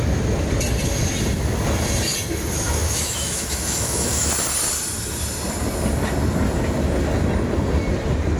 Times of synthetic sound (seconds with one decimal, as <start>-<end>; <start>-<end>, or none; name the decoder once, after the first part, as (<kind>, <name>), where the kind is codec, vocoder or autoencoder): 2.8-4.3 (autoencoder, DAC-VAE)